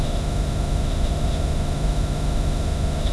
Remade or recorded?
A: remade